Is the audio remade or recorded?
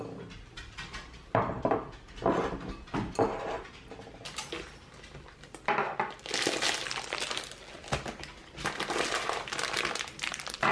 recorded